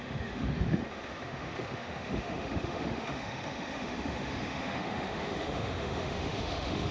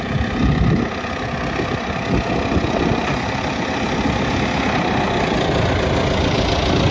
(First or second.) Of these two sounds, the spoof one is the first